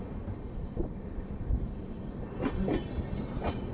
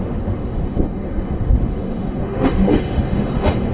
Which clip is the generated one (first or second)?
second